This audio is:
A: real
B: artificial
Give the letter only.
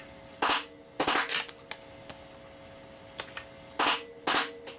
A